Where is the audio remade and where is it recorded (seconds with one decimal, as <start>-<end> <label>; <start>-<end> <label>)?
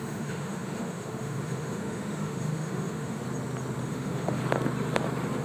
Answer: 0.0-3.2 remade; 3.2-3.8 recorded; 3.8-4.4 remade; 4.4-5.4 recorded